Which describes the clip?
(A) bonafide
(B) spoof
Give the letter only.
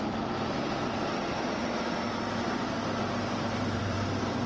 B